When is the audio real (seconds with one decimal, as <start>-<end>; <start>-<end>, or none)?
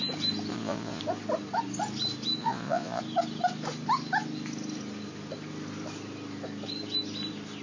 0.0-0.5; 1.0-2.4; 3.0-7.6